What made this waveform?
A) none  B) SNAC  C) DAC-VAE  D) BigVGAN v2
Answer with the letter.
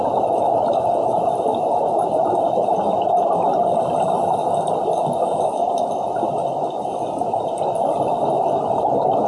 A